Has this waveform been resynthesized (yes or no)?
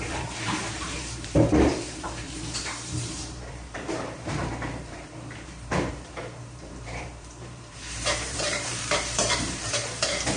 yes